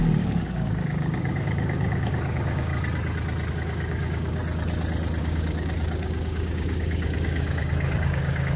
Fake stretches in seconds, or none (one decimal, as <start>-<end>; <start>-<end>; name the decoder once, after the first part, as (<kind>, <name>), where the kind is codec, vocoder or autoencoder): 0.0-2.7 (codec, DAC); 3.5-4.4; 5.2-8.6